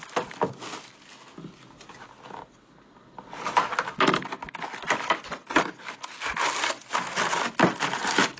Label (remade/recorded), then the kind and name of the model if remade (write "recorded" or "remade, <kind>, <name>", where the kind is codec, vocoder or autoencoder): recorded